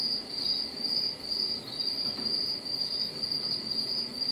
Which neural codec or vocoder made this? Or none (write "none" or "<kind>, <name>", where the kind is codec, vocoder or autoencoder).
none